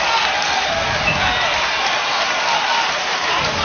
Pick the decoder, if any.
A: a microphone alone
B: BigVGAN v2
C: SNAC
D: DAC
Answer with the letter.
A